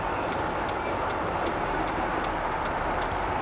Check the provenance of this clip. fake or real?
real